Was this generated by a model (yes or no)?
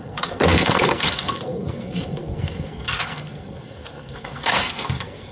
yes